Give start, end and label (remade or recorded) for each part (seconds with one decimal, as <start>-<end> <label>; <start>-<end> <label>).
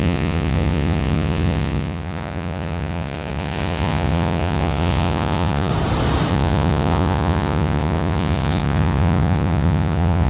0.0-5.7 remade; 5.7-6.3 recorded; 6.3-10.3 remade